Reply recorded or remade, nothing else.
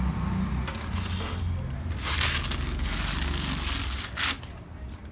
recorded